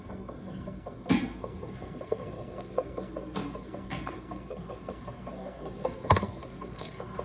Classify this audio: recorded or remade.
remade